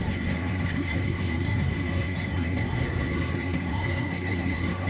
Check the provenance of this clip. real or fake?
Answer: fake